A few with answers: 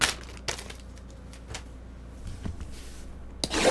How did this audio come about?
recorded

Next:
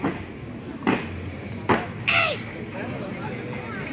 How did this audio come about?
recorded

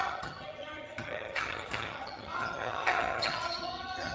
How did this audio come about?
remade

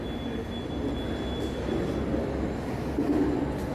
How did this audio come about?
recorded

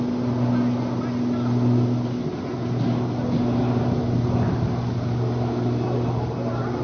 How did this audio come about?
recorded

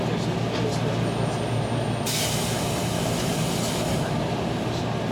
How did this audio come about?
recorded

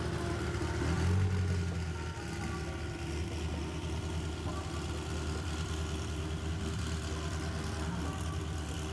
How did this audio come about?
recorded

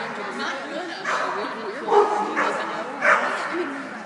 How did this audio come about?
recorded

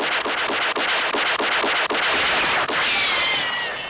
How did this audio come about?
recorded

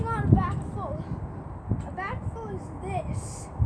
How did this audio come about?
recorded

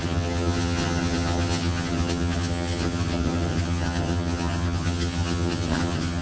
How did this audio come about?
remade